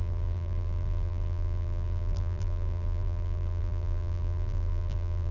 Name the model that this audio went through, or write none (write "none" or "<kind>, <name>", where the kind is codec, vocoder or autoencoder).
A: vocoder, BigVGAN v2